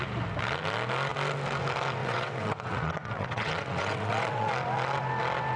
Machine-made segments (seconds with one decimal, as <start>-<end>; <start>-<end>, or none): 2.0-4.5